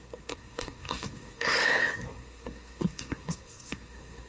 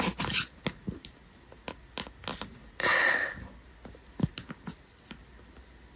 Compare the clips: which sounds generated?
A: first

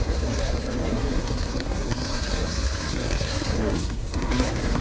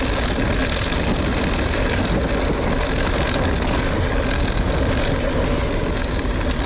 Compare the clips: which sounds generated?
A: first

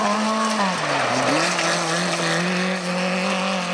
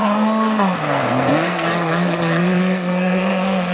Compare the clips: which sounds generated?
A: second